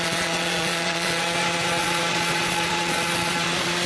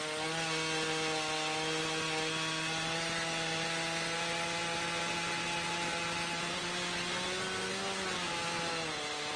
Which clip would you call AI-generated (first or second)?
first